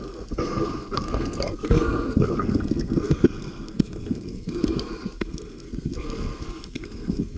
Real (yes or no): no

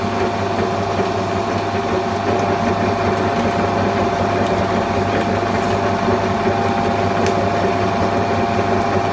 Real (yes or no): yes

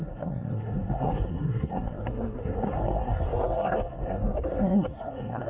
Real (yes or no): no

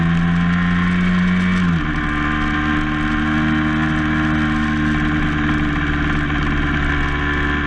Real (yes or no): yes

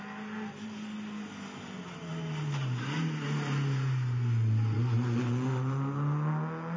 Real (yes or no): yes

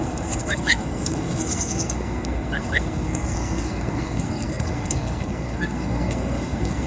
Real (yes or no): no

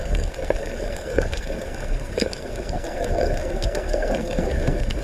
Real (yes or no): no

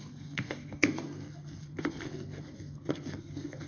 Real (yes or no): no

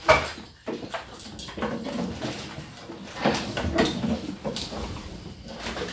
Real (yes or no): yes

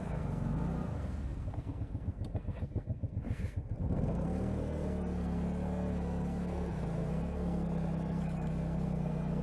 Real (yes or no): no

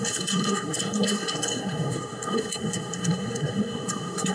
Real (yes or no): no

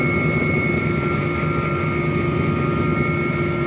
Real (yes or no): yes